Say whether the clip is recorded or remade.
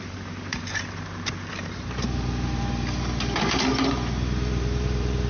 remade